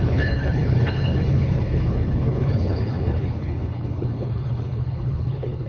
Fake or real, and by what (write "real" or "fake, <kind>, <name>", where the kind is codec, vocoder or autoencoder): fake, codec, HILCodec